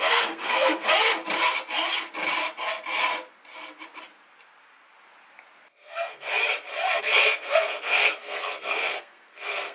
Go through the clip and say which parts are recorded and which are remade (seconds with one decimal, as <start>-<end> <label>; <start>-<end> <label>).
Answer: 0.0-0.9 remade; 0.9-5.7 recorded; 5.7-6.4 remade; 6.4-7.0 recorded; 7.0-9.7 remade